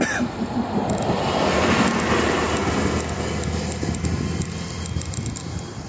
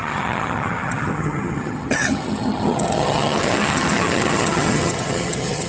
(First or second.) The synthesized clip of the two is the second